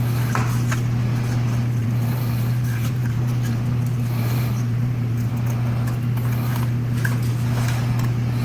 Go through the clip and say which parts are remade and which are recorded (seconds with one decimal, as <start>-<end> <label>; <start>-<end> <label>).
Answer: 0.0-1.8 recorded; 1.8-5.3 remade; 5.3-8.4 recorded